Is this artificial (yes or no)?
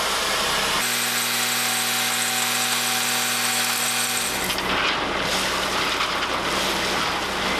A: no